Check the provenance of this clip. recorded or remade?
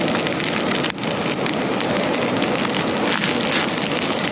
recorded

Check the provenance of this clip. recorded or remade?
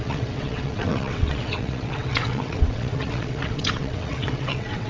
remade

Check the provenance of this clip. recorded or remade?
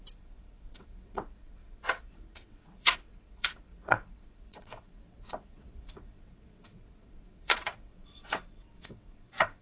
remade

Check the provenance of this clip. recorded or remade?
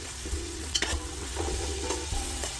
remade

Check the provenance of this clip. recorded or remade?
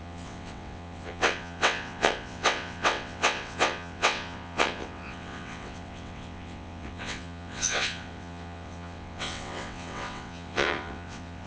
remade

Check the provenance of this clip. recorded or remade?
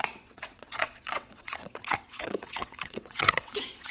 remade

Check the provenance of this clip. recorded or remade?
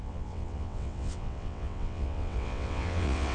remade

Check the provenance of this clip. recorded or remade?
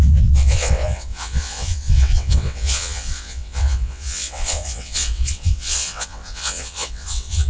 remade